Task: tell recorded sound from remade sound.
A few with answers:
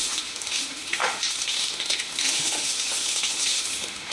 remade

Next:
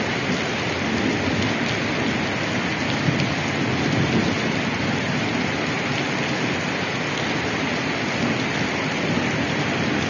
recorded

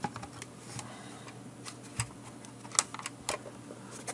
recorded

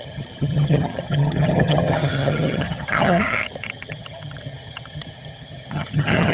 remade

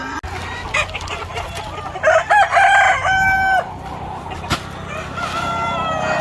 recorded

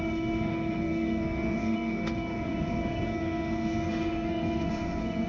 remade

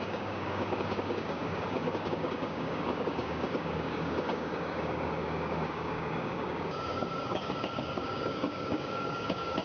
remade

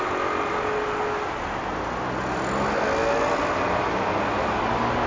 recorded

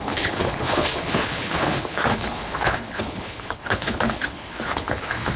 remade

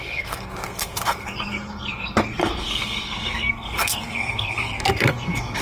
remade